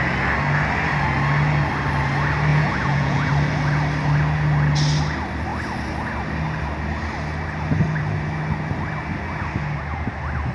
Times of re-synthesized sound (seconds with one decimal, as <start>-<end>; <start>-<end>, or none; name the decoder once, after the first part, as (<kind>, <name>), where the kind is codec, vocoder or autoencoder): 2.5-3.3 (vocoder, Vocos)